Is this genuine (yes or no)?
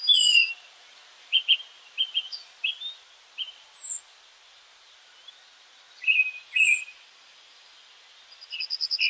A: yes